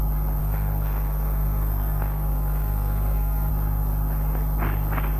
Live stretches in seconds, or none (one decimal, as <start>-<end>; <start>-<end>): 0.0-0.4; 3.5-5.2